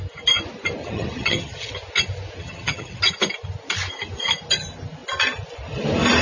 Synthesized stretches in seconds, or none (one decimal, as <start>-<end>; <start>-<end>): 0.8-1.7; 2.4-3.0